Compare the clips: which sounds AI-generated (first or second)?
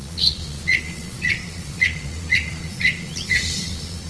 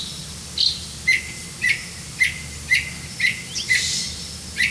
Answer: first